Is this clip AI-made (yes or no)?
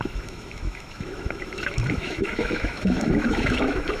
yes